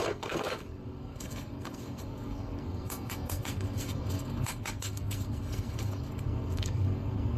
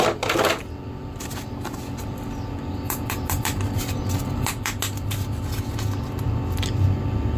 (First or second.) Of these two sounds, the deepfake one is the first